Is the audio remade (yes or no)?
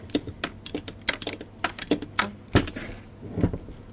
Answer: no